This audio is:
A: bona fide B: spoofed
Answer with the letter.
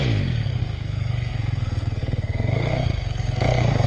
B